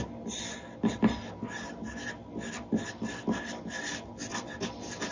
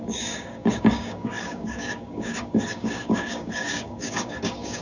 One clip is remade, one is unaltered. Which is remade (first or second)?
second